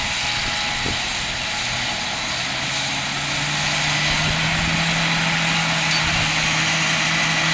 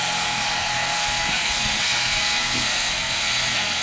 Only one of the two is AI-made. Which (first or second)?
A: second